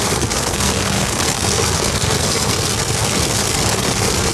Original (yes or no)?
no